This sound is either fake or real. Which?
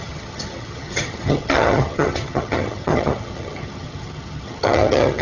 fake